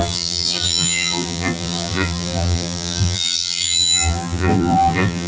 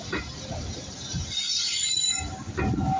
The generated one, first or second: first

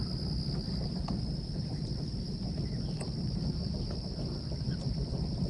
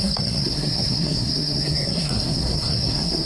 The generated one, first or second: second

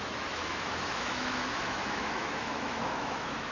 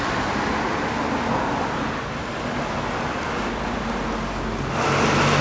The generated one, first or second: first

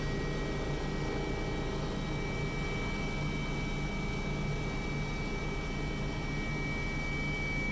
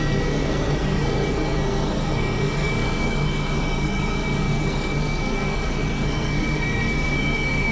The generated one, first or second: second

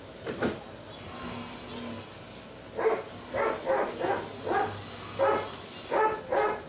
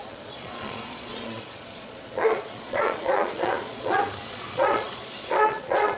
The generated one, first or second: second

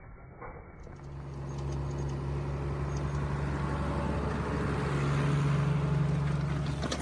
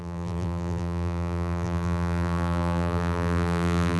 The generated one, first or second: second